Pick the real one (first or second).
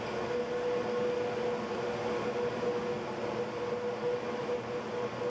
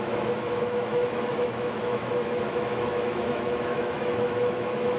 first